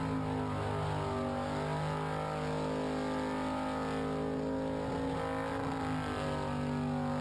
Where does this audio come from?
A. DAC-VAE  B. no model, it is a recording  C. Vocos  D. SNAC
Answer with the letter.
B